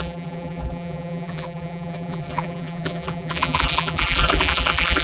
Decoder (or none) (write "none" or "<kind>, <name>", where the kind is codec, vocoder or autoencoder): vocoder, BigVGAN v2